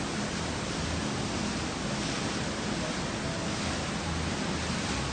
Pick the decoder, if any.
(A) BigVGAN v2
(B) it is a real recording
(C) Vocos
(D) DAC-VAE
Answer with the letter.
B